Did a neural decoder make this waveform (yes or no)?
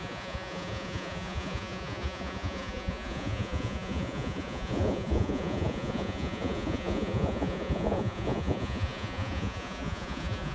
yes